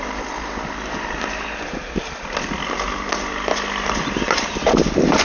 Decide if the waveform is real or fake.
real